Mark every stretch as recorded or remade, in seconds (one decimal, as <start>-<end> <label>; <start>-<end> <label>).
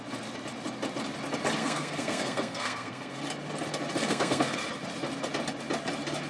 0.0-1.6 recorded; 1.6-3.2 remade; 3.2-4.0 recorded; 4.0-4.6 remade; 4.6-6.3 recorded